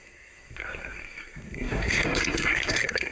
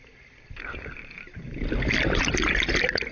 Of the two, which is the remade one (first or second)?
first